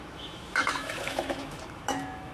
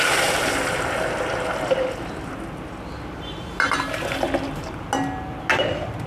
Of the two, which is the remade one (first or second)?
first